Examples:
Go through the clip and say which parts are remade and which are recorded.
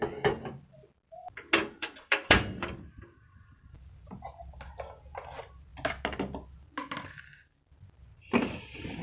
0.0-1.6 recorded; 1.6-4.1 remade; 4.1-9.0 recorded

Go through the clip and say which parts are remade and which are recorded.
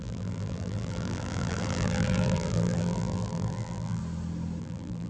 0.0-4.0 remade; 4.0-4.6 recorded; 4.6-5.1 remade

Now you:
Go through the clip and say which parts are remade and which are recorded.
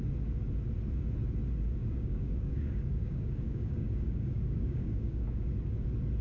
0.0-1.8 recorded; 1.8-5.5 remade; 5.5-6.2 recorded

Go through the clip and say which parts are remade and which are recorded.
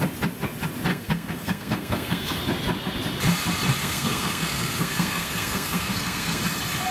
0.0-0.9 recorded; 0.9-2.4 remade; 2.4-3.8 recorded; 3.8-6.4 remade; 6.4-6.9 recorded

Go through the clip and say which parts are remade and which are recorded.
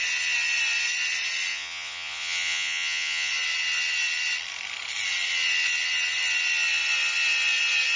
0.0-1.5 recorded; 1.5-3.3 remade; 3.3-8.0 recorded